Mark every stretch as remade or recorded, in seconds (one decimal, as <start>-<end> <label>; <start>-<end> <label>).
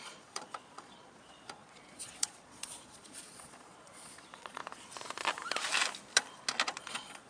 0.0-4.6 remade; 4.6-6.8 recorded; 6.8-7.3 remade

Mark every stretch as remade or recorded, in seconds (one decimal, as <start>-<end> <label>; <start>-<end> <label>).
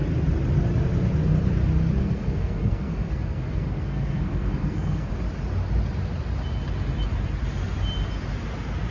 0.0-2.0 recorded; 2.0-5.1 remade; 5.1-8.9 recorded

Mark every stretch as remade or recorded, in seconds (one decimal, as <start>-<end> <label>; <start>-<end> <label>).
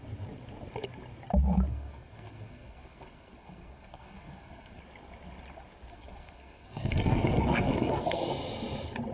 0.0-1.7 recorded; 1.7-4.8 remade; 4.8-5.9 recorded; 5.9-8.2 remade; 8.2-9.1 recorded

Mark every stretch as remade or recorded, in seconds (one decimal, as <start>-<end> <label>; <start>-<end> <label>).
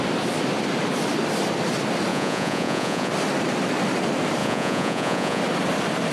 0.0-2.1 recorded; 2.1-3.1 remade; 3.1-4.4 recorded; 4.4-5.4 remade; 5.4-6.1 recorded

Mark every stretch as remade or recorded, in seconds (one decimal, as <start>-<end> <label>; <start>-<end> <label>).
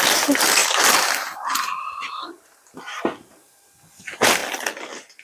0.0-0.6 recorded; 0.6-3.5 remade; 3.5-5.2 recorded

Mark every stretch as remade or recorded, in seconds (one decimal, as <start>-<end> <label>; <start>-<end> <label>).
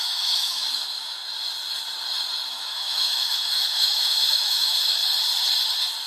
0.0-1.2 remade; 1.2-2.5 recorded; 2.5-5.0 remade; 5.0-6.1 recorded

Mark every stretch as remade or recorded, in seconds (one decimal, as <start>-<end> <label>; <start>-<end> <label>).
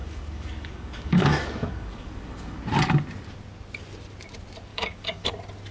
0.0-2.6 remade; 2.6-4.7 recorded; 4.7-5.3 remade; 5.3-5.7 recorded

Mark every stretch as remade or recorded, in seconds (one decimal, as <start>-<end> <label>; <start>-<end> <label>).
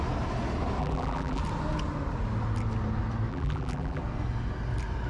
0.0-0.8 recorded; 0.8-1.4 remade; 1.4-3.3 recorded; 3.3-4.0 remade; 4.0-5.1 recorded